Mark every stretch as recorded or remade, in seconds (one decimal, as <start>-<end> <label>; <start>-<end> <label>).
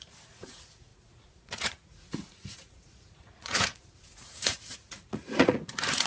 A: 0.0-6.1 remade